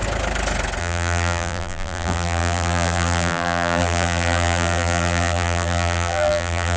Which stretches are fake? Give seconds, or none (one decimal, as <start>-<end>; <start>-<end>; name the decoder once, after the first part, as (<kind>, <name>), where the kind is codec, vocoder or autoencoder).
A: 0.8-6.8 (vocoder, BigVGAN v2)